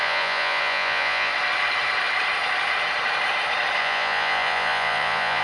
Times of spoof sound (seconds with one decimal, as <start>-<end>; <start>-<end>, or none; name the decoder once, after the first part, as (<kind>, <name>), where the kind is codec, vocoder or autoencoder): 0.0-1.3 (vocoder, Vocos); 3.8-5.4